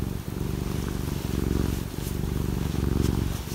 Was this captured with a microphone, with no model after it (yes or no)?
yes